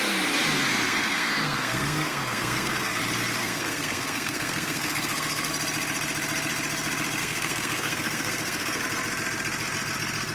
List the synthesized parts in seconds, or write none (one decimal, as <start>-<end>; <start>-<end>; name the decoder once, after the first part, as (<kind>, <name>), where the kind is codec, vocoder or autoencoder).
0.7-3.0 (codec, SNAC); 3.4-5.5; 7.2-8.8